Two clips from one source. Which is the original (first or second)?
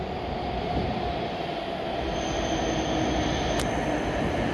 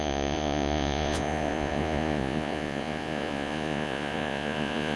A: first